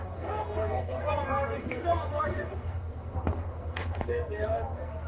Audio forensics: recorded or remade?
remade